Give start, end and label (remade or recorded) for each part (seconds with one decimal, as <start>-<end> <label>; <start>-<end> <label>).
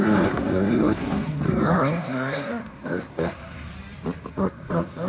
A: 0.0-3.7 remade; 3.7-4.3 recorded; 4.3-5.1 remade